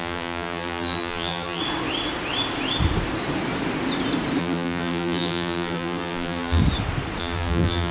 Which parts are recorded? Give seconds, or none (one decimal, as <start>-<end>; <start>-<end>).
1.6-4.4; 6.6-7.2